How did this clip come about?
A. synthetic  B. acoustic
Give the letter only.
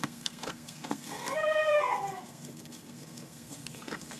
A